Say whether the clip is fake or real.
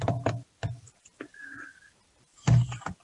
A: fake